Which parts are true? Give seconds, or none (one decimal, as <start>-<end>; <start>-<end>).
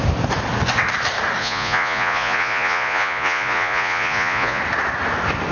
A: 0.0-1.4; 4.6-5.5